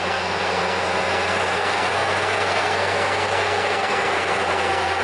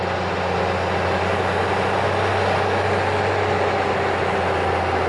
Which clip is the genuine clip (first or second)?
second